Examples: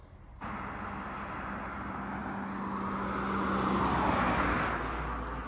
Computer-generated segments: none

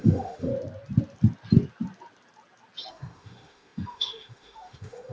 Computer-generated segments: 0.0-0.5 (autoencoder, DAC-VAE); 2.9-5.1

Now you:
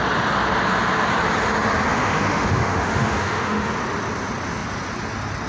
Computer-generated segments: 1.9-3.7 (autoencoder, DAC-VAE)

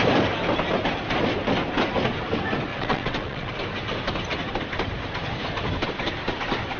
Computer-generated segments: 2.7-3.5 (vocoder, WaveNeXt)

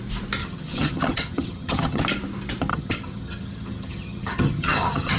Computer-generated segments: 0.4-2.0 (vocoder, HiFi-GAN); 2.7-5.2

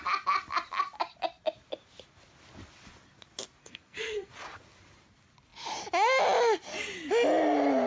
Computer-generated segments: 3.6-4.3 (codec, SNAC)

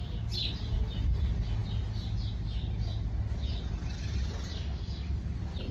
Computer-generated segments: 4.5-5.2 (codec, DAC)

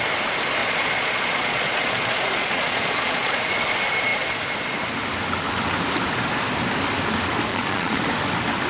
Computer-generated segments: 0.6-3.4 (vocoder, Vocos); 7.5-8.0